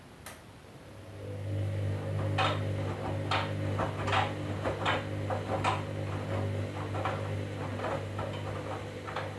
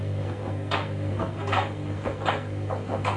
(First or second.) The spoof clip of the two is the second